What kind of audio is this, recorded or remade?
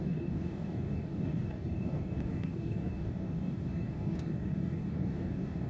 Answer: remade